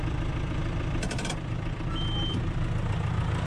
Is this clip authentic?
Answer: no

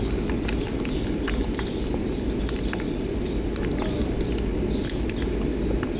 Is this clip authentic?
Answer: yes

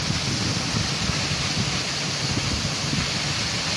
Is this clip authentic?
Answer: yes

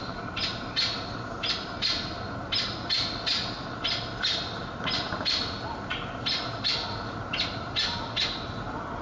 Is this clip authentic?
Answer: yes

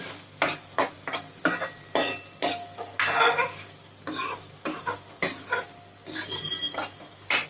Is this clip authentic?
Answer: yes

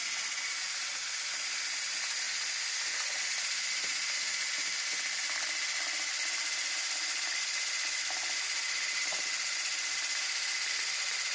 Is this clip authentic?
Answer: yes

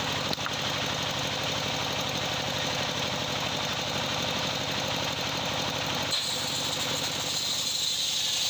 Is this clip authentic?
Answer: yes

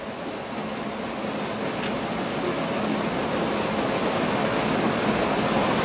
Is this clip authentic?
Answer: yes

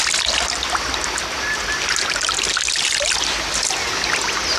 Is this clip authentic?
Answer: yes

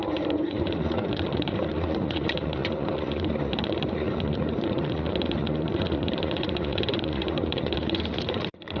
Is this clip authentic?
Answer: no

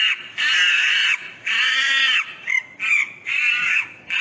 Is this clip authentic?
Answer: yes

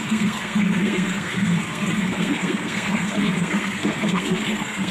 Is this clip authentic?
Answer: no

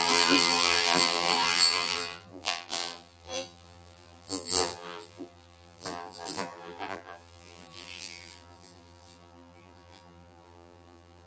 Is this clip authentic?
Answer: no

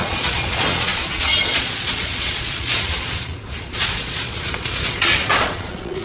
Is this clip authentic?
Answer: no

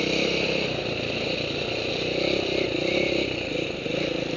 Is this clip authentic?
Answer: yes